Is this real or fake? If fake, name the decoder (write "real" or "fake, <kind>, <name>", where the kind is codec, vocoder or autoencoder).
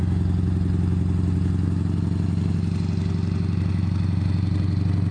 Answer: real